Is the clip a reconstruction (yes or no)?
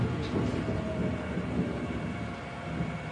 no